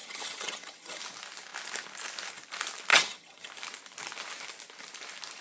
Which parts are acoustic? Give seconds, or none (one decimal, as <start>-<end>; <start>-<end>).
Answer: 1.0-2.9; 3.5-5.4

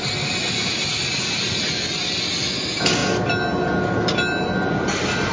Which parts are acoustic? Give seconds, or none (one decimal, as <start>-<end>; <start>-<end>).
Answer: 0.0-5.3

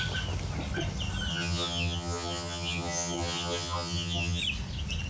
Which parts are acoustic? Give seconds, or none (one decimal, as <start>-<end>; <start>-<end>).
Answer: 0.0-1.3; 4.4-5.1

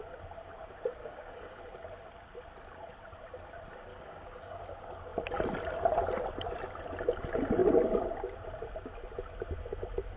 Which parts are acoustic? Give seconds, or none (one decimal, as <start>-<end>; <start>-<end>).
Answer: 0.0-1.0; 1.6-3.9; 4.6-10.2

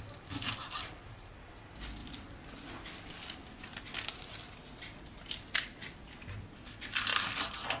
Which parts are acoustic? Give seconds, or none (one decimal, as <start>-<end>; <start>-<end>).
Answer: 0.0-7.8

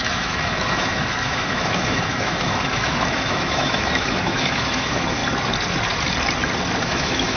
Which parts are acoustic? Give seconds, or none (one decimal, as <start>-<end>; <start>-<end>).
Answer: 5.2-6.8

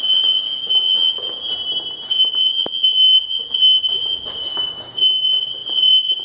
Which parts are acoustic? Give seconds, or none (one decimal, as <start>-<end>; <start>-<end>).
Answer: 0.0-6.2

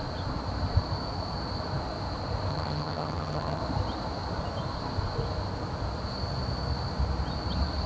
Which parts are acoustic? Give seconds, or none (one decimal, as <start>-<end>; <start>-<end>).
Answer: 0.0-2.5; 3.6-7.9